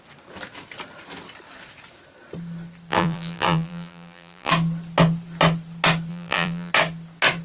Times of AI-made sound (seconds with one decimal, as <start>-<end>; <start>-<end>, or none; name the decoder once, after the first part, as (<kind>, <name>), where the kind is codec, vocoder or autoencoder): 2.9-4.5 (vocoder, BigVGAN v2); 6.1-6.7

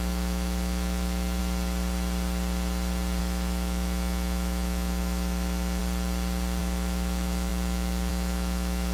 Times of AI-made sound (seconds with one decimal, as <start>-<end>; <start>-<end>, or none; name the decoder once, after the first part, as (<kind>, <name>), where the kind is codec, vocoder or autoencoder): 0.0-1.4 (autoencoder, DAC-VAE); 3.2-5.8; 6.6-8.9